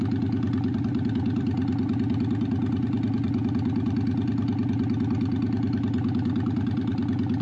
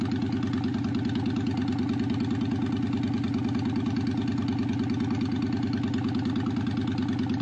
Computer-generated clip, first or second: first